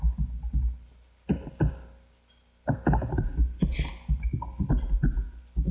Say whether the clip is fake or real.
real